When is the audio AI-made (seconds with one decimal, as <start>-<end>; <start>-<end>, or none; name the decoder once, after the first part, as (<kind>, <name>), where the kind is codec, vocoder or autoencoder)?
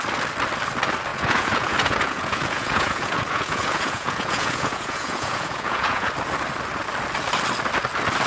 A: 1.1-6.1 (vocoder, Vocos)